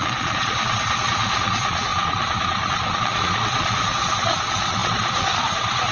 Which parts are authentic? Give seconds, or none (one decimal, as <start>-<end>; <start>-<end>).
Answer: none